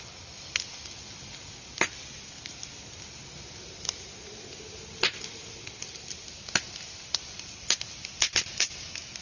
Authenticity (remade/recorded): recorded